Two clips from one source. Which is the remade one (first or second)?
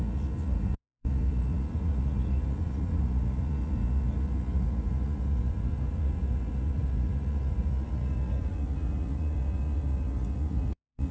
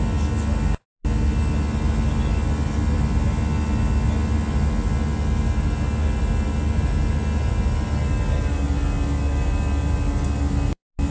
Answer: first